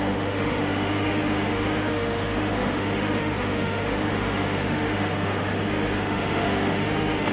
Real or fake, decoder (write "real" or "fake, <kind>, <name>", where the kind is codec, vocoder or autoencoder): fake, autoencoder, DAC-VAE